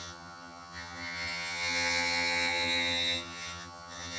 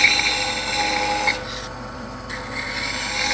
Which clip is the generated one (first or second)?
first